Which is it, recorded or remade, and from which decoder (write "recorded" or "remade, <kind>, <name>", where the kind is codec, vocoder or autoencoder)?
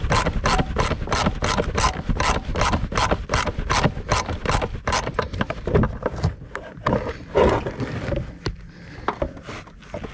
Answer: recorded